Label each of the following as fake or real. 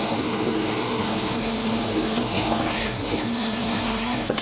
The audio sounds fake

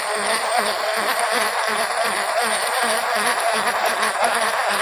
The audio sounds fake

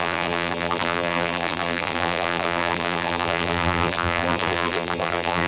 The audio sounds fake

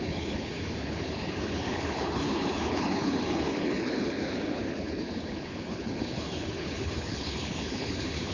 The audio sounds fake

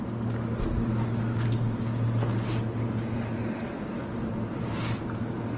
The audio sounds real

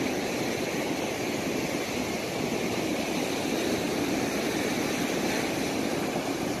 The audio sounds real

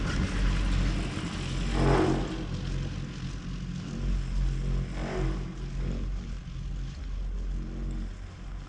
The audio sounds real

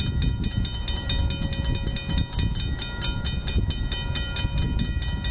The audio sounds real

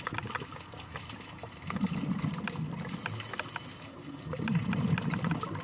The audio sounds real